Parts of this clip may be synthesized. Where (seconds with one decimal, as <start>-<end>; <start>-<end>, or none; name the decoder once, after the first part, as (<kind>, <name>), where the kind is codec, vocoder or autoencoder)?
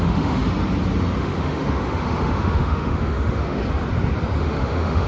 0.0-0.4 (autoencoder, DAC-VAE); 1.2-3.6; 4.4-5.1